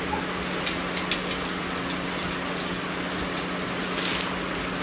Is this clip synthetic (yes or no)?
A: no